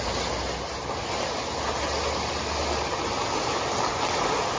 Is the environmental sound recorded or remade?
recorded